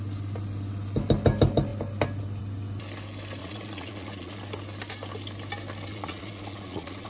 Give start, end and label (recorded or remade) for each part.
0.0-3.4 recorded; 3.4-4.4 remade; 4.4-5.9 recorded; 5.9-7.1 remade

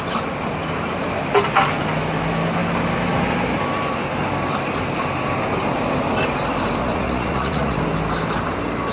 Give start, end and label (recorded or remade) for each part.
0.0-6.8 recorded; 6.8-7.8 remade; 7.8-8.9 recorded

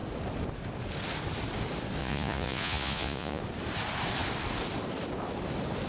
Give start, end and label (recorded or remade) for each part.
0.0-2.0 recorded; 2.0-3.4 remade; 3.4-5.9 recorded

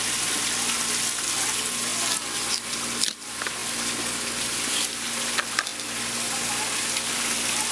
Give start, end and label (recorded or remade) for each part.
0.0-7.7 recorded